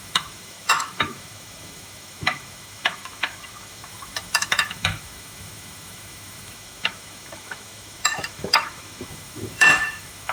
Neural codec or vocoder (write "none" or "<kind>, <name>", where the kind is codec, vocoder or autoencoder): autoencoder, DAC-VAE